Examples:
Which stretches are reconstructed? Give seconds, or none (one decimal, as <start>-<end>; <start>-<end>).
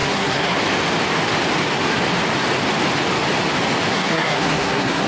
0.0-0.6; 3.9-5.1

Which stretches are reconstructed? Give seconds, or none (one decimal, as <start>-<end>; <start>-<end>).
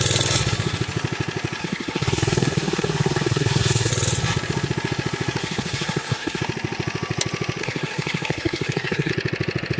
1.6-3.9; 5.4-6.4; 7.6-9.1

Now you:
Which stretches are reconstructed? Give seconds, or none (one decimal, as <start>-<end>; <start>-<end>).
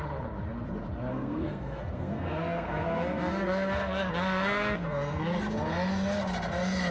1.1-5.2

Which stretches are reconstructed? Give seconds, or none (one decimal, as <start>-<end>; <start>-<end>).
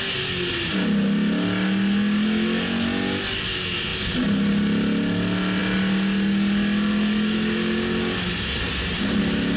none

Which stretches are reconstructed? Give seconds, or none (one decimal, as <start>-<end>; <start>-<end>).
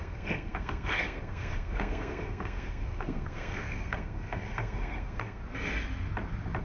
0.0-5.4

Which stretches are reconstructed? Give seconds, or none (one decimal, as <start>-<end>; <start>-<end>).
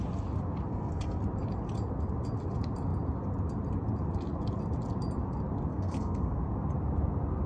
0.7-1.2; 5.7-6.4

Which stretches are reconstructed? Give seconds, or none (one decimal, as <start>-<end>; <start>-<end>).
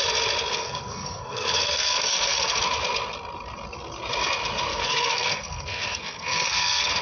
0.5-2.6; 4.7-7.0